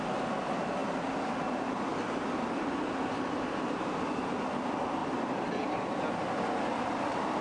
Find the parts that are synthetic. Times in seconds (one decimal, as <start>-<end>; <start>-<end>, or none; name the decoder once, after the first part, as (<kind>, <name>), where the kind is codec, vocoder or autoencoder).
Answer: 1.9-3.0 (vocoder, BigVGAN v2); 5.0-7.4